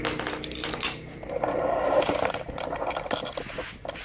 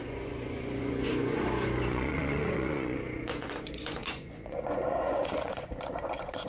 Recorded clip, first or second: first